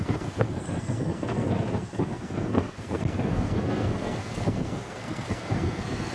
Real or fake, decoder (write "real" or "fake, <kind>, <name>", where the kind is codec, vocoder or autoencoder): fake, codec, SNAC